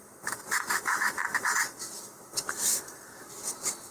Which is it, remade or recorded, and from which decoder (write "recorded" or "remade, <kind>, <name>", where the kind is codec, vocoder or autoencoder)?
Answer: remade, autoencoder, DAC-VAE